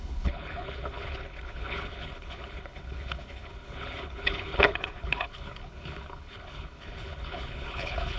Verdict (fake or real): fake